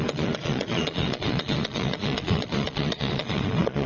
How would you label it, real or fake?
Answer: fake